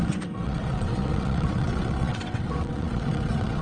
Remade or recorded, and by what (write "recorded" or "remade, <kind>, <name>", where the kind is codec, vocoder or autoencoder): remade, vocoder, WaveNeXt